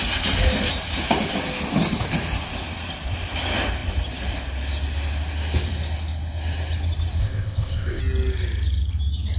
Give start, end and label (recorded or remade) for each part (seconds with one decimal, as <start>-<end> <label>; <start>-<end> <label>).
0.0-7.2 recorded; 7.2-8.0 remade; 8.0-9.4 recorded